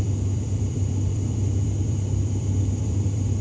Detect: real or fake fake